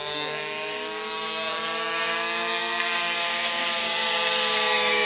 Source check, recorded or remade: remade